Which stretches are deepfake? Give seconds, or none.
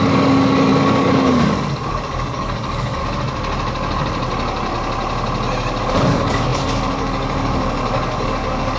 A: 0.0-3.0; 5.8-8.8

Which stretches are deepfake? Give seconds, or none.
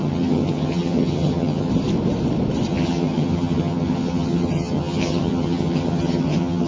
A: 0.0-1.7; 2.7-6.7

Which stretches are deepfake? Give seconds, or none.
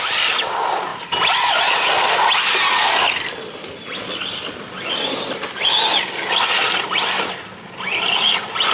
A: none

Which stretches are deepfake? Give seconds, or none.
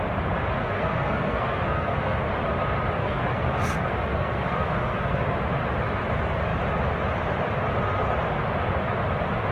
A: 0.6-2.3; 3.0-5.2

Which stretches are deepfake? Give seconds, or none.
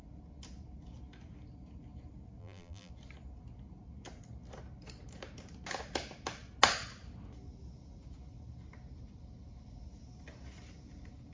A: 2.4-2.9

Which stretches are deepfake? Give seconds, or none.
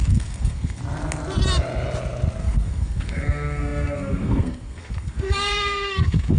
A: 0.0-0.8; 2.4-6.4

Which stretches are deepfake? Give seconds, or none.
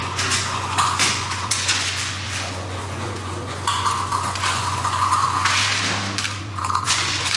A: 0.0-5.6; 6.4-7.4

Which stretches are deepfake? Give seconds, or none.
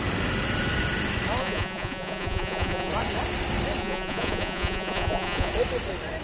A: 1.4-2.9; 3.8-5.5